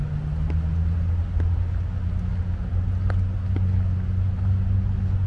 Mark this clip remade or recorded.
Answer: recorded